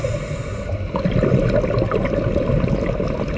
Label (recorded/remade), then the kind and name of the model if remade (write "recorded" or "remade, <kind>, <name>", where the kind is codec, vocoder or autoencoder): recorded